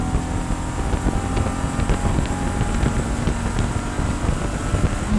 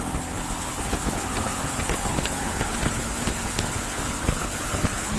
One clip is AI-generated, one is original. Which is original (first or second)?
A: first